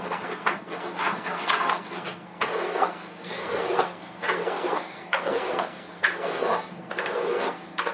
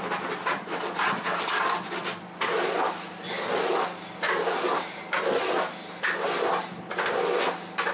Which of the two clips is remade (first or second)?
first